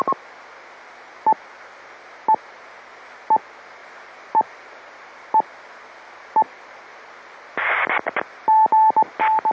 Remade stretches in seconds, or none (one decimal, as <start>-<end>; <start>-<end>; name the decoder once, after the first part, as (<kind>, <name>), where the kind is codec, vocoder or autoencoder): 3.8-5.1 (vocoder, BigVGAN v2)